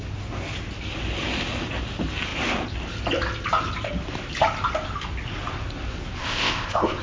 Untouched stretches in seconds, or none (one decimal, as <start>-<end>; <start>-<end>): 0.0-6.2